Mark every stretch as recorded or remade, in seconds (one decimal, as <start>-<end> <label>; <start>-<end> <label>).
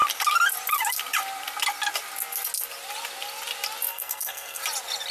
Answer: 0.0-3.9 recorded; 3.9-4.6 remade; 4.6-5.1 recorded